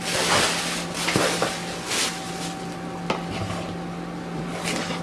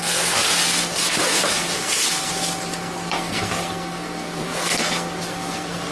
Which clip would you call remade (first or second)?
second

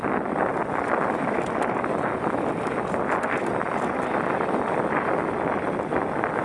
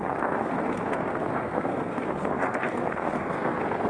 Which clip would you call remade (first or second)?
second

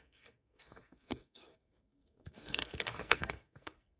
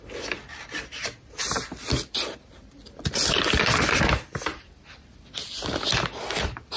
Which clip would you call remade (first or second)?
first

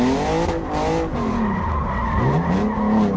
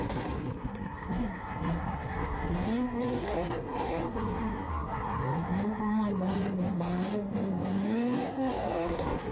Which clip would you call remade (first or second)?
second